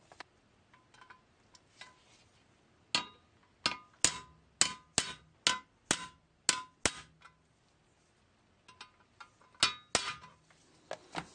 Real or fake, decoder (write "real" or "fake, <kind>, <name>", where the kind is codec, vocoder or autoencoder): real